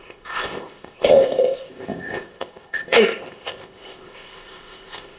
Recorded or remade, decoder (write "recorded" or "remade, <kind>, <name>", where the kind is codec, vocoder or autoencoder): remade, codec, ZipCodec